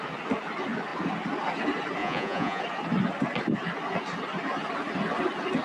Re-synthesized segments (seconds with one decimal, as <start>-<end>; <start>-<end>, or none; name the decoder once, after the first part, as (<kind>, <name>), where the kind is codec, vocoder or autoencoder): 2.0-2.6 (vocoder, Vocos)